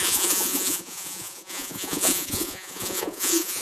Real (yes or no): no